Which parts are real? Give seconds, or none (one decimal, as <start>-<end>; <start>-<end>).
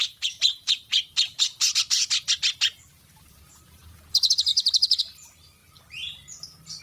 0.9-2.9; 5.6-6.8